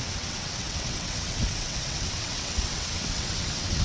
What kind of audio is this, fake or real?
fake